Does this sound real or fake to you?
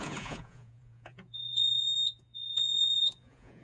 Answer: fake